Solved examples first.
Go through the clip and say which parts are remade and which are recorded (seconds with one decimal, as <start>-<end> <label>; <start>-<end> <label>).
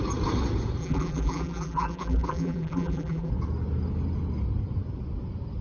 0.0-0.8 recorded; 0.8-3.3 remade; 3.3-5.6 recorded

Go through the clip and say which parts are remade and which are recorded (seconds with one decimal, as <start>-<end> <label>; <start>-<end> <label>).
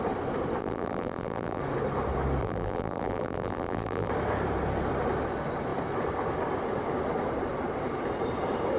0.0-0.6 recorded; 0.6-1.6 remade; 1.6-2.4 recorded; 2.4-4.1 remade; 4.1-8.8 recorded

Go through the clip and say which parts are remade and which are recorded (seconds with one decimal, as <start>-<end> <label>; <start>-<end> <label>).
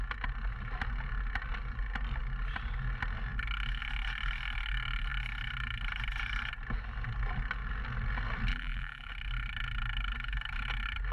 0.0-8.5 recorded; 8.5-9.1 remade; 9.1-11.1 recorded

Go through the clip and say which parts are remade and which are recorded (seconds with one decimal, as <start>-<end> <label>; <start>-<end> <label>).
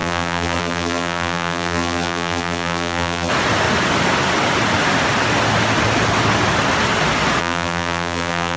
0.0-3.3 remade; 3.3-7.4 recorded; 7.4-8.6 remade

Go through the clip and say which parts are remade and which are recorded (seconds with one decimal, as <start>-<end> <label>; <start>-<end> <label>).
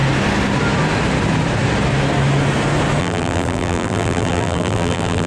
0.0-3.0 recorded; 3.0-5.3 remade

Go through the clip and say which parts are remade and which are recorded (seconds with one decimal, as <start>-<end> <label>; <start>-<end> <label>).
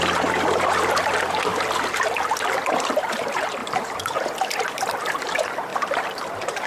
0.0-1.5 remade; 1.5-2.9 recorded; 2.9-6.7 remade